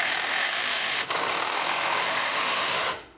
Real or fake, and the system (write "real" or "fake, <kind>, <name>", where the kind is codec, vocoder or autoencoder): fake, autoencoder, DAC-VAE